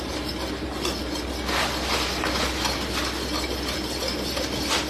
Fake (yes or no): no